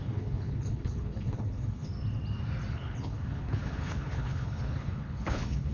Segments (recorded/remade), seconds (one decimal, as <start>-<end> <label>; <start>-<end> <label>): 0.0-1.9 remade; 1.9-2.7 recorded; 2.7-5.7 remade